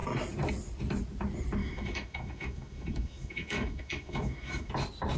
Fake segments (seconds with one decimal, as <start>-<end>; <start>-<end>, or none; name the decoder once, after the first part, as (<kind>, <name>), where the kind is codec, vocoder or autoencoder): 1.6-4.7 (autoencoder, DAC-VAE)